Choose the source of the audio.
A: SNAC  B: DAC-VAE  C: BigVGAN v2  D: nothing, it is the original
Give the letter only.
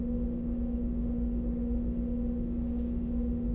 B